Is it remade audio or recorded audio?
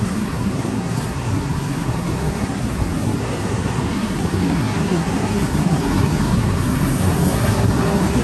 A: remade